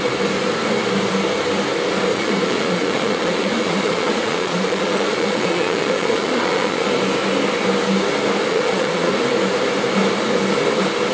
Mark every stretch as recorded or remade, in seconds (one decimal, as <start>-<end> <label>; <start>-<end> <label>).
0.0-2.1 recorded; 2.1-6.9 remade; 6.9-8.5 recorded; 8.5-9.1 remade; 9.1-11.1 recorded